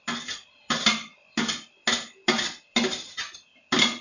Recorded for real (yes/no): yes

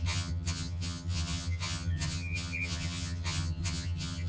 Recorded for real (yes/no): no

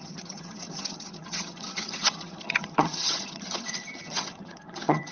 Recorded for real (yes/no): no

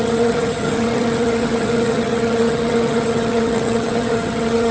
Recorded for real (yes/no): no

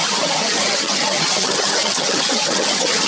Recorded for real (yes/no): no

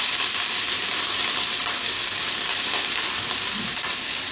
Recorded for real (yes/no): yes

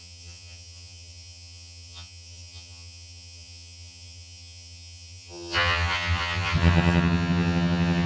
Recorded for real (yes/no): no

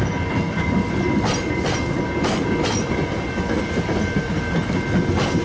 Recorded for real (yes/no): yes